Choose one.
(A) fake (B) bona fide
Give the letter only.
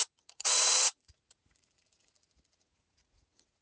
A